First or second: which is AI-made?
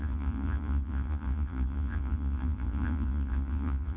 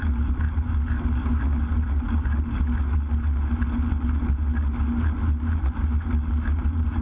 first